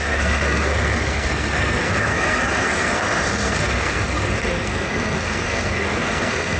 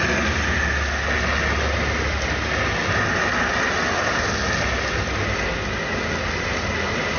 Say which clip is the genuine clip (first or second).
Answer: second